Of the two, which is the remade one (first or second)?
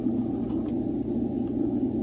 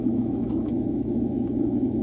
second